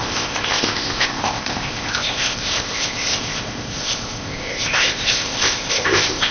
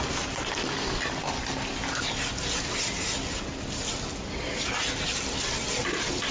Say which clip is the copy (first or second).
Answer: first